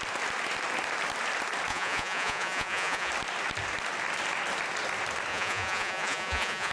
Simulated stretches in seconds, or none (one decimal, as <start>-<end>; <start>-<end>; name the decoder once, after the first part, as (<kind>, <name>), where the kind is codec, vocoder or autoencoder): 1.7-3.1 (vocoder, Vocos); 5.3-6.7